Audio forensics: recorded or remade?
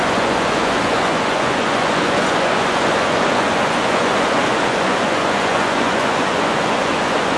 remade